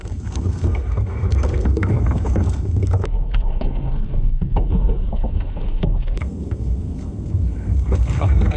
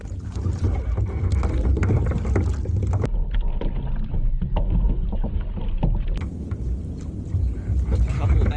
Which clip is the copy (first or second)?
first